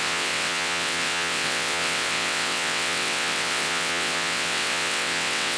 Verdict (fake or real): fake